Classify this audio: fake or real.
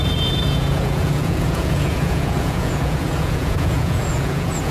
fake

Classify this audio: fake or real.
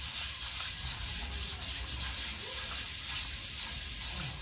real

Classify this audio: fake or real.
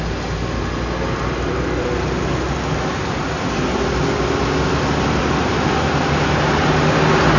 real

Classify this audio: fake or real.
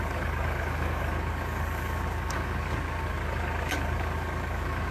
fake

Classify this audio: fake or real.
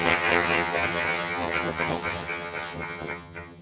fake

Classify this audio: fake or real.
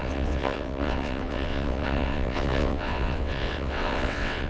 fake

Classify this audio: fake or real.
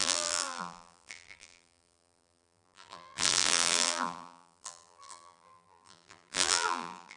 fake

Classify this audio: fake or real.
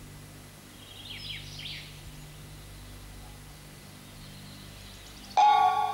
real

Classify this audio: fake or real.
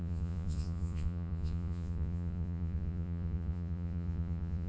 fake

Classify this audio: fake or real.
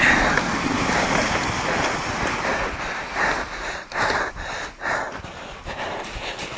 real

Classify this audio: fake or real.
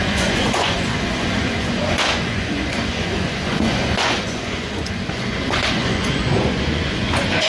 fake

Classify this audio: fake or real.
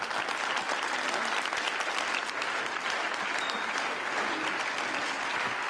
real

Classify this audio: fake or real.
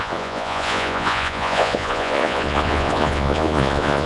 fake